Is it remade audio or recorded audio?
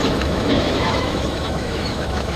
remade